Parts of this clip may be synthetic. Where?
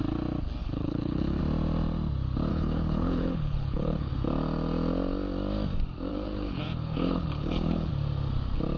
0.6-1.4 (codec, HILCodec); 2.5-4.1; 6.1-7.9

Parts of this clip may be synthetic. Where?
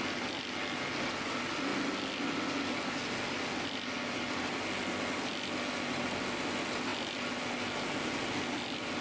none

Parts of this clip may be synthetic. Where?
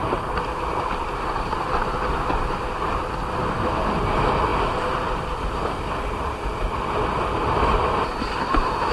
none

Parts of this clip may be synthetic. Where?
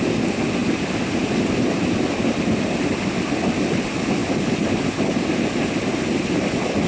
none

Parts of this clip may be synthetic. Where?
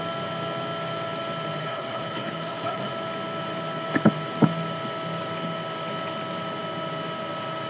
1.6-2.9 (codec, HILCodec)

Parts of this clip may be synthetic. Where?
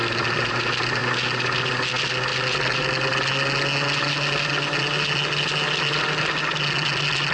none